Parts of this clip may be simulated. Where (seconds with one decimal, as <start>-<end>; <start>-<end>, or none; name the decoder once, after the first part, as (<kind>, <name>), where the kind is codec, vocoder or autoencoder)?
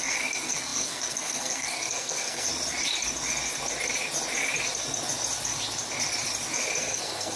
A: 0.0-2.5 (codec, SNAC); 6.8-7.4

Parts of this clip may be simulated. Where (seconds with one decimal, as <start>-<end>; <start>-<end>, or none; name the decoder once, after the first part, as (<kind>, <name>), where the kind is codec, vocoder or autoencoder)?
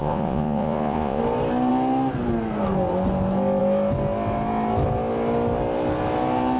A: 0.0-1.2 (vocoder, Vocos)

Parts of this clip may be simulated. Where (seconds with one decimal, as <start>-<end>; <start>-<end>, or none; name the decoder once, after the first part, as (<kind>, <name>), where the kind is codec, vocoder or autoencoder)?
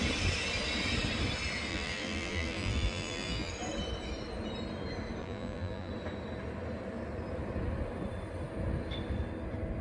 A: 1.7-3.5 (vocoder, BigVGAN v2); 5.2-5.9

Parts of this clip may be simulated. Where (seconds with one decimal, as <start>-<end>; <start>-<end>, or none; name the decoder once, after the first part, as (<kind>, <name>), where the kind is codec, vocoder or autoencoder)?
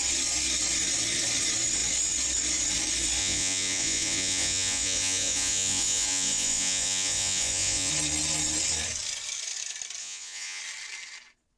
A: 3.2-7.9 (vocoder, Vocos); 10.0-10.6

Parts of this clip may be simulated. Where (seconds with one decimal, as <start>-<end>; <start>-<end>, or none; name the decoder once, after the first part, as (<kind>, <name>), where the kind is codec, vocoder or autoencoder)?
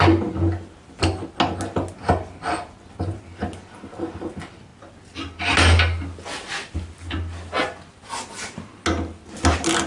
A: none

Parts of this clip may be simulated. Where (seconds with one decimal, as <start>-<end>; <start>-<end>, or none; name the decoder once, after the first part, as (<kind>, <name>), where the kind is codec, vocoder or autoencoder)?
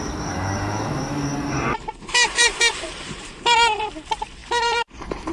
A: 0.0-5.3 (vocoder, BigVGAN v2)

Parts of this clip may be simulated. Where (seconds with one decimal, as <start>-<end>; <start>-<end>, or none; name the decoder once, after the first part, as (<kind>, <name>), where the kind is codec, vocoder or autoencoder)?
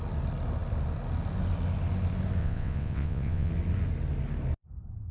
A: 2.4-3.5 (vocoder, WaveNeXt)